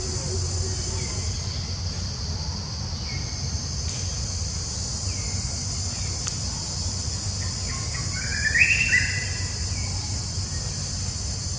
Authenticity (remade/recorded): recorded